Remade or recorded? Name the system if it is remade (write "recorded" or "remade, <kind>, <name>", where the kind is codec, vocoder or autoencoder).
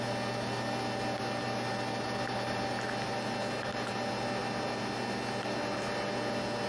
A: recorded